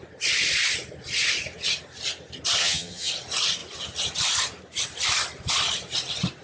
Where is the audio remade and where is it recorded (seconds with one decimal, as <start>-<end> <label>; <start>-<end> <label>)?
0.0-2.6 recorded; 2.6-3.1 remade; 3.1-6.4 recorded